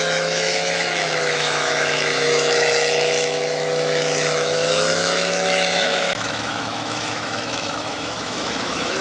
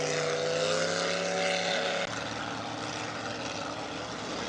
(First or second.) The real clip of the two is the second